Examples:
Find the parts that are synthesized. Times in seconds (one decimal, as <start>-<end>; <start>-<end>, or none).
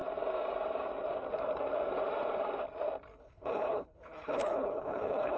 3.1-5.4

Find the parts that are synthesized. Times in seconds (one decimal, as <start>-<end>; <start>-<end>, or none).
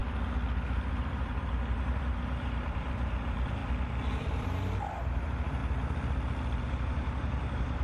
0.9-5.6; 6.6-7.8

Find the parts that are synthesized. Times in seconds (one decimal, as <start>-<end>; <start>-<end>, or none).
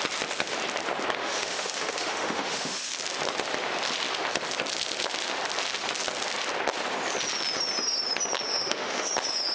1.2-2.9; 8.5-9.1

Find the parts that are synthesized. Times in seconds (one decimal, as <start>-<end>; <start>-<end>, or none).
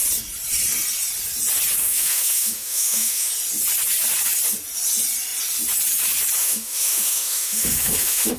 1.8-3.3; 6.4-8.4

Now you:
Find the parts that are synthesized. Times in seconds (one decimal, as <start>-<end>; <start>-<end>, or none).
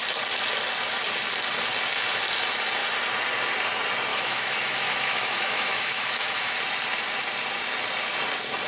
4.1-6.6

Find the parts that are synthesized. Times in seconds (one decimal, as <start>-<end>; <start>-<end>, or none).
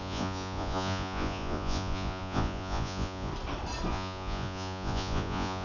0.0-3.3; 3.9-5.6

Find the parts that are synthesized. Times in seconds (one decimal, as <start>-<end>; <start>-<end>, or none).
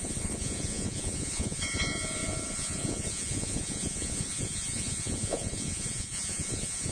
0.0-6.9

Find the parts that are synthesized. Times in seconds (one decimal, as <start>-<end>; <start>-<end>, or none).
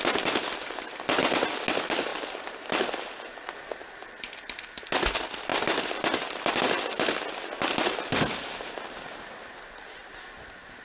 none